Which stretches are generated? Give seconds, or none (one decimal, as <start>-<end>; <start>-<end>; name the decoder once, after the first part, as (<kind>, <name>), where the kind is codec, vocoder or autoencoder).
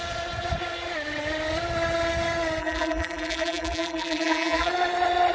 2.6-4.7 (vocoder, BigVGAN v2)